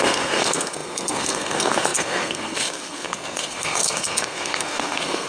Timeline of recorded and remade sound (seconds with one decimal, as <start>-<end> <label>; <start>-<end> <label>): 0.0-5.3 remade